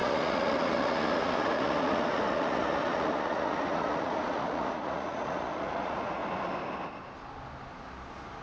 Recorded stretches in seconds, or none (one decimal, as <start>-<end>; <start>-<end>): 6.2-8.4